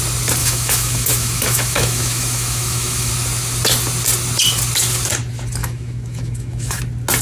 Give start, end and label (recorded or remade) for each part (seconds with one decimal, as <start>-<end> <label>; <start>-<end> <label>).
0.0-0.4 recorded; 0.4-3.1 remade; 3.1-5.6 recorded; 5.6-6.8 remade; 6.8-7.2 recorded